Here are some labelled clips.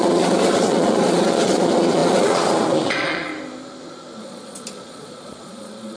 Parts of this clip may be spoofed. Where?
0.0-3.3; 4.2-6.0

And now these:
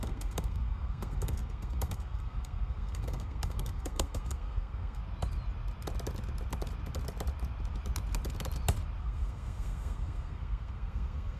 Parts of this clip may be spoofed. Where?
0.0-5.0; 9.0-11.4

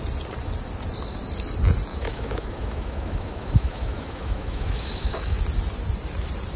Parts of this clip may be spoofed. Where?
1.9-5.4

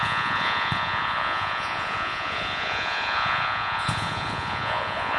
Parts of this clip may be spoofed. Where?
0.0-5.2

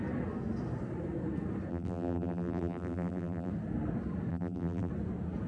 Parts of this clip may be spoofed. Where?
1.7-3.5; 4.3-4.9

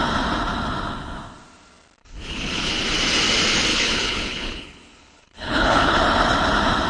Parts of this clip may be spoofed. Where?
2.0-2.7; 3.7-6.0